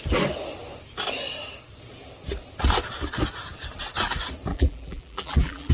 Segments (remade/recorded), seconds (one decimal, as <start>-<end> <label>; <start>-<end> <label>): 0.0-4.5 recorded; 4.5-5.7 remade